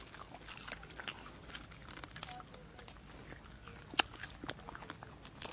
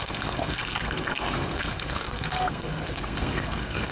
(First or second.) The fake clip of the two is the second